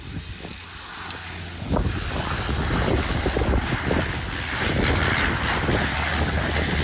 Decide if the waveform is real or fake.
real